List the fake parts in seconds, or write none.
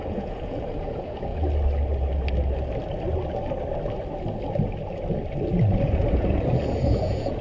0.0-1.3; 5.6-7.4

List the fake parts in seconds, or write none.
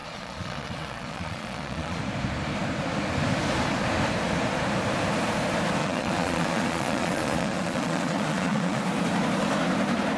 0.0-2.0; 5.8-8.8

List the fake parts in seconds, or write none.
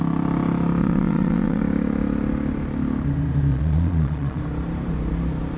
0.8-1.6; 3.5-4.4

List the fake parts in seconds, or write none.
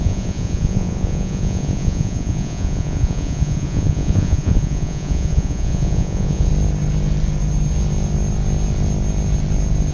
0.0-6.5